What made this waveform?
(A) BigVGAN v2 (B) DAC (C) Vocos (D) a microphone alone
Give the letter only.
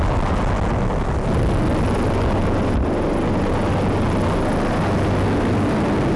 D